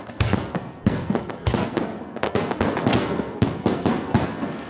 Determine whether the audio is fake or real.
fake